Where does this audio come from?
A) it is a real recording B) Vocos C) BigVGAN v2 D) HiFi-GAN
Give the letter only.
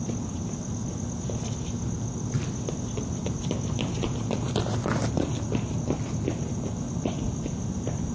A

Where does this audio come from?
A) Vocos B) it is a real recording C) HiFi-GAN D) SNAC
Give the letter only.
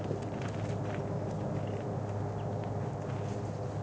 B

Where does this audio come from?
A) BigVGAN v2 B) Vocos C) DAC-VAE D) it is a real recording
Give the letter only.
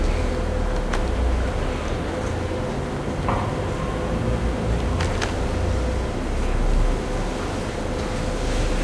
D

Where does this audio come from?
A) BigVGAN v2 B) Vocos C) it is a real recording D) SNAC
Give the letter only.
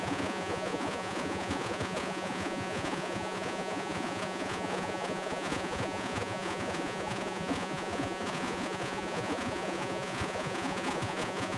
B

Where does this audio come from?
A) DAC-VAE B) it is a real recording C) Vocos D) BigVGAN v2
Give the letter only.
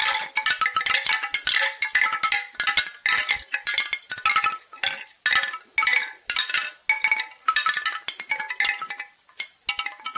B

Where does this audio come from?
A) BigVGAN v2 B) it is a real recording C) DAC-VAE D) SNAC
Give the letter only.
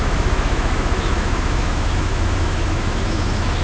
C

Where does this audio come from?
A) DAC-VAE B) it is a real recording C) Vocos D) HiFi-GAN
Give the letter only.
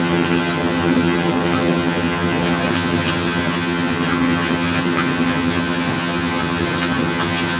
D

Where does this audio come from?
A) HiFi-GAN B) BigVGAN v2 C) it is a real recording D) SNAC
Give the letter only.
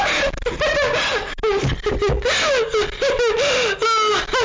C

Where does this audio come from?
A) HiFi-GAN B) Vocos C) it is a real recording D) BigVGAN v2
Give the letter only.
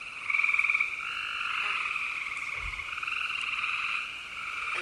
C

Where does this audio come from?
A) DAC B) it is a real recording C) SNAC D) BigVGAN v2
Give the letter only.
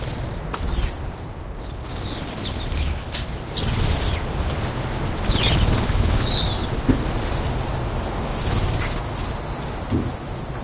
B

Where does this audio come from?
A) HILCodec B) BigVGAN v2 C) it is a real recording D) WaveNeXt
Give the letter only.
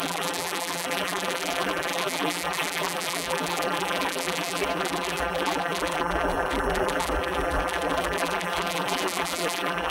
B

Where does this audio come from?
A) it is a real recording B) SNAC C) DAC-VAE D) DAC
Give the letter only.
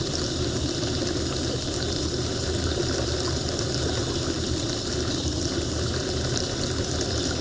A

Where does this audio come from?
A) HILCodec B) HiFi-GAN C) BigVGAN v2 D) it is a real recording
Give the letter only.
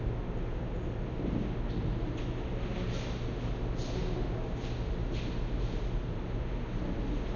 D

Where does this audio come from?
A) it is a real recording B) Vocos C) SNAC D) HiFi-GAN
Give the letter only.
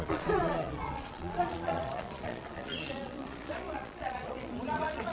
B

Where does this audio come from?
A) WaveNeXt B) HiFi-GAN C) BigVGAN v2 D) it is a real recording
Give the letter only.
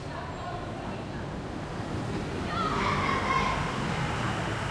D